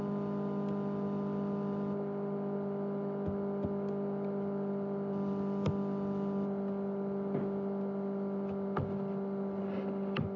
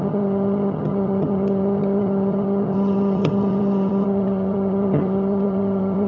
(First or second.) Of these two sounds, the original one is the first